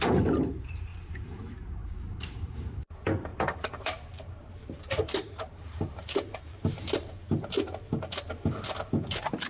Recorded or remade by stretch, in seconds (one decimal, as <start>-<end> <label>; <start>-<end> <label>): 0.0-0.9 recorded; 0.9-1.4 remade; 1.4-1.8 recorded; 1.8-2.8 remade; 2.8-3.3 recorded; 3.3-7.1 remade; 7.1-9.5 recorded